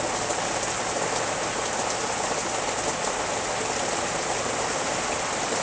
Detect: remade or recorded recorded